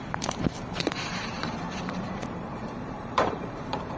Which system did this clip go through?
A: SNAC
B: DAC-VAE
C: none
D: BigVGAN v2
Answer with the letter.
D